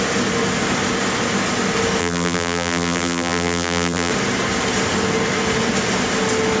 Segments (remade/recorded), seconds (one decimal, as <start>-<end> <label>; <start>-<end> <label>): 0.0-2.0 recorded; 2.0-4.1 remade; 4.1-6.6 recorded